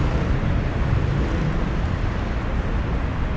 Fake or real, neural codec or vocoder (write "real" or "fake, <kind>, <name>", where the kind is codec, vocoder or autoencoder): real